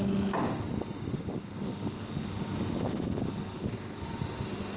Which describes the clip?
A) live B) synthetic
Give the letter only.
A